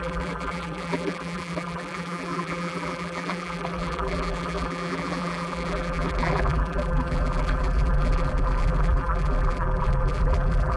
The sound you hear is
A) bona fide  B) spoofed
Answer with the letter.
B